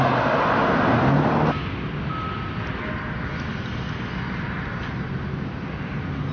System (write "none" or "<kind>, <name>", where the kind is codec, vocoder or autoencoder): none